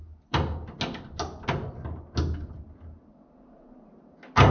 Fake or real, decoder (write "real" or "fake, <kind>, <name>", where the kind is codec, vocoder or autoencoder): real